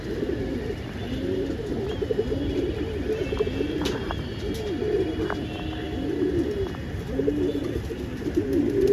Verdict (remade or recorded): recorded